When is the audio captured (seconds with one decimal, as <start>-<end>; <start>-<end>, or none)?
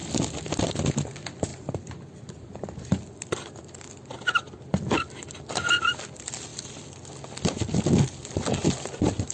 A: 0.8-9.3